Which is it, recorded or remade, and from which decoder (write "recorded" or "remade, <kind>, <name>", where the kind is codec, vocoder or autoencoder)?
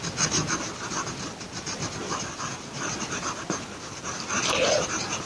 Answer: recorded